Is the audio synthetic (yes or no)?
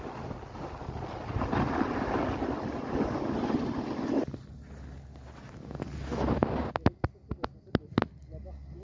no